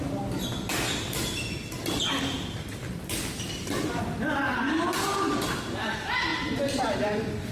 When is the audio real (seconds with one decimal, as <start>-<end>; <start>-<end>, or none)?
0.7-5.2; 6.3-6.9